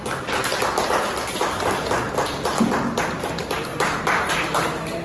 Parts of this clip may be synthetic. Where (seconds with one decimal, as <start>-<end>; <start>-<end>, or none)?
3.7-4.3